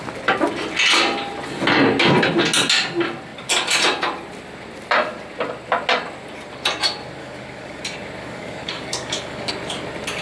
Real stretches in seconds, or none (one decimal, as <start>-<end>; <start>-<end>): 0.0-7.2; 7.8-8.2; 9.5-10.2